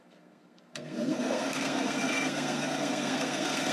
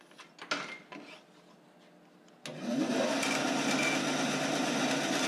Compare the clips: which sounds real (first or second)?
second